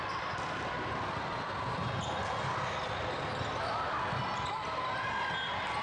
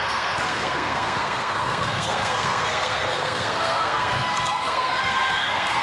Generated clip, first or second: second